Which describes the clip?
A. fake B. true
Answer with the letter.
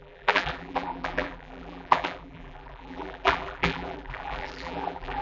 A